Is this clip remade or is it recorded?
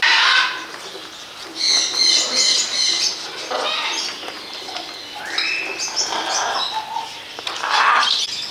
recorded